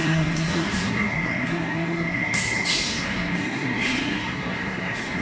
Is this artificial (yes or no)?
yes